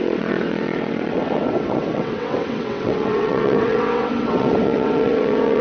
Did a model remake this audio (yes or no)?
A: yes